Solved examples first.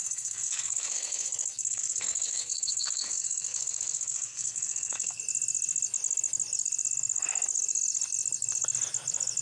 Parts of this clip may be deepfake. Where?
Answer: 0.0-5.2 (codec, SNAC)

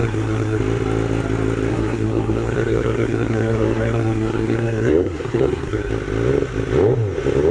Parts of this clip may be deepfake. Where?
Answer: 0.0-0.6 (codec, SNAC); 1.7-5.9

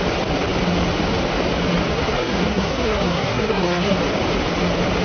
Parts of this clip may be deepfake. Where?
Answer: 1.9-4.0 (codec, SNAC)

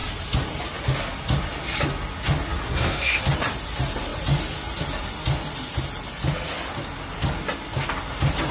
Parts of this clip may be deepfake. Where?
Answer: 2.6-3.2 (codec, SNAC)

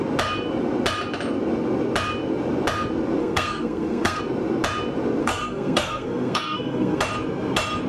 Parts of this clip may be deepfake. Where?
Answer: 3.2-4.2 (codec, SNAC); 5.2-7.0